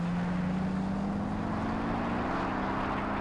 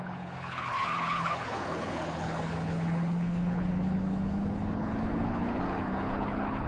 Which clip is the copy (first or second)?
second